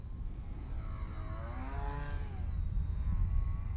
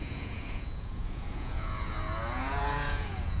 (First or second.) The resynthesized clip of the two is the second